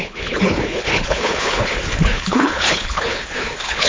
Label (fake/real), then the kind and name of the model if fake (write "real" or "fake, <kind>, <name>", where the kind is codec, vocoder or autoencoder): fake, codec, HILCodec